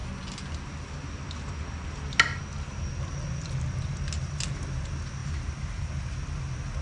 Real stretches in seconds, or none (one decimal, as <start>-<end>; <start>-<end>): 0.0-5.2; 5.9-6.8